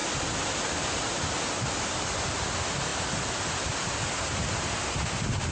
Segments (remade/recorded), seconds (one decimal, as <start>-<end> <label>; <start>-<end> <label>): 0.0-5.5 recorded